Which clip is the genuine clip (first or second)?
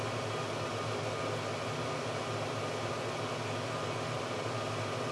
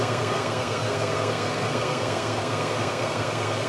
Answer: first